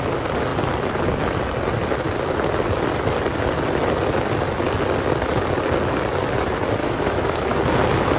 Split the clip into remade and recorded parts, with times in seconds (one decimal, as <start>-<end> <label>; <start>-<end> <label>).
0.0-6.8 recorded; 6.8-7.6 remade; 7.6-8.2 recorded